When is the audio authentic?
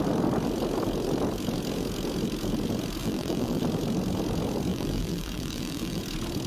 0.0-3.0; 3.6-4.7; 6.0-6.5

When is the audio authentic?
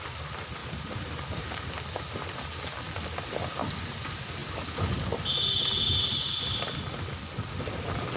0.0-0.6; 1.6-8.2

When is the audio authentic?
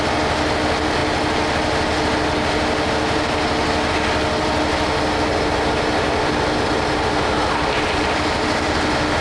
0.0-9.2